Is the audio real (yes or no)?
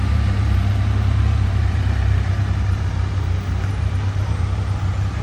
no